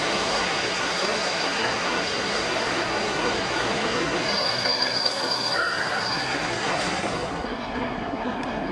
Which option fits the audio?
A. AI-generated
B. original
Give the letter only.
A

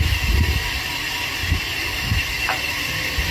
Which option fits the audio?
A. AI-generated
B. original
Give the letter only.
A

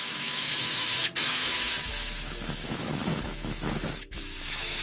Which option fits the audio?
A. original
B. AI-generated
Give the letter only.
B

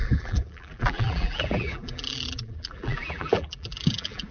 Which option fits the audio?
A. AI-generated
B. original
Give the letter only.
A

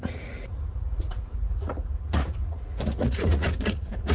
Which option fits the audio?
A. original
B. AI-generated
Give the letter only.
B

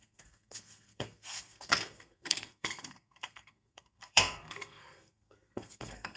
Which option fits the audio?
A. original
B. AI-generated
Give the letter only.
B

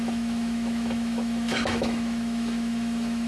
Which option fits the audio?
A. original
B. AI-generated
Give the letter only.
B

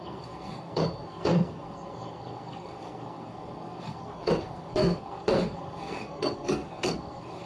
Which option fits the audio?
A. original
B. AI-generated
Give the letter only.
B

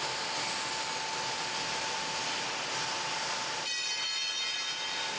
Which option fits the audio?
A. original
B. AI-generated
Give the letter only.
A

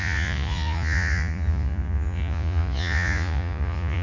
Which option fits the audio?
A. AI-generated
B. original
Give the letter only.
A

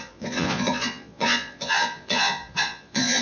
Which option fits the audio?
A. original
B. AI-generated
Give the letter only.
B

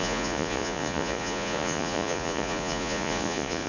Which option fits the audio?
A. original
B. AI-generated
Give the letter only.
B